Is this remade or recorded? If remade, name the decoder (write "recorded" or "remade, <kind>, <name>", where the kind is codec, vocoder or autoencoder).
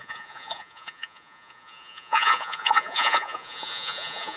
remade, vocoder, Vocos